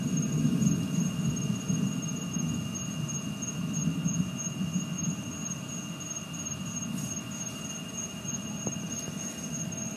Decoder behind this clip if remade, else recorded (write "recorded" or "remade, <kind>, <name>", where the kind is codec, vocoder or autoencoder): recorded